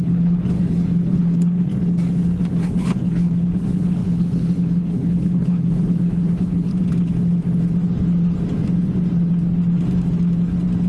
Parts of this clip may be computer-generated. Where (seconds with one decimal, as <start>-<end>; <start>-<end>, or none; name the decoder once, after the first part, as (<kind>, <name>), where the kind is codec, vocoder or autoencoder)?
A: 0.0-1.7 (codec, HILCodec); 2.4-6.7